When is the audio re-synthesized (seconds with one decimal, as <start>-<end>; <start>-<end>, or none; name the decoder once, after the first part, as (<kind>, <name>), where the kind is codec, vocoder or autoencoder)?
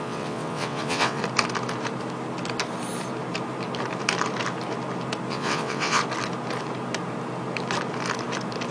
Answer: 0.0-1.2 (vocoder, WaveNeXt); 5.3-6.0